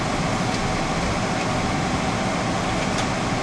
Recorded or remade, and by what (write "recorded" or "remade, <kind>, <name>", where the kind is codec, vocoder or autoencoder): recorded